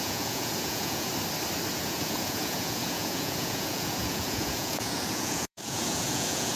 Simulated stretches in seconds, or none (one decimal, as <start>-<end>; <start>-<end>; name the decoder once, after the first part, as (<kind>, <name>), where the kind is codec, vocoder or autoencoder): 0.0-1.1 (vocoder, Vocos); 1.7-6.6